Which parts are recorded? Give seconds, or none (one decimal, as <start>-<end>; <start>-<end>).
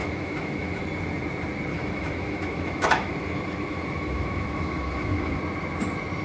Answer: 0.8-1.7; 5.4-6.2